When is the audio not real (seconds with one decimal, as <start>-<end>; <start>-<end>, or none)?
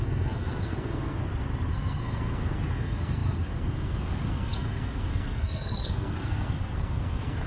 0.0-1.2; 1.7-7.5